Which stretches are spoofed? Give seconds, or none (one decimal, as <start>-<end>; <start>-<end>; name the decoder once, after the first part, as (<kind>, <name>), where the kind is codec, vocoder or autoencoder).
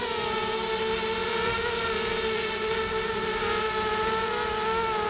1.2-3.4 (vocoder, BigVGAN v2)